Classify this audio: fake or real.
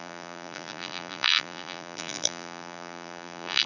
fake